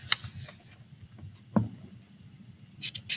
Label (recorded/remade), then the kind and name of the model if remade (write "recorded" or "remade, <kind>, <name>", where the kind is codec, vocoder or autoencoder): recorded